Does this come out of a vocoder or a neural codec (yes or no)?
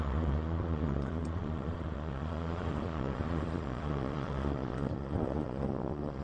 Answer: yes